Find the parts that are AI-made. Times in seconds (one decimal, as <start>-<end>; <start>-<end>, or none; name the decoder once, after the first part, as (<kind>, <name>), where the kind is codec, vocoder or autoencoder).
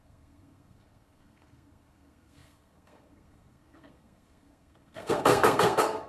0.0-6.1 (codec, SNAC)